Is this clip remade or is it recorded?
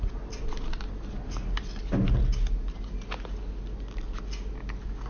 recorded